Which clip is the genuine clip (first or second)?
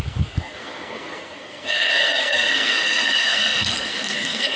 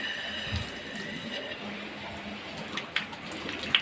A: second